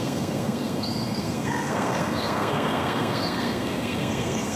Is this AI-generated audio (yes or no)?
yes